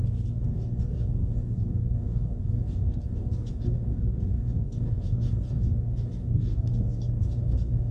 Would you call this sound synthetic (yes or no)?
yes